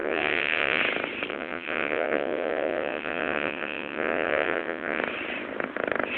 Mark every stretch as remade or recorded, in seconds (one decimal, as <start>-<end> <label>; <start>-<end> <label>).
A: 0.0-0.8 remade; 0.8-1.3 recorded; 1.3-5.0 remade; 5.0-6.2 recorded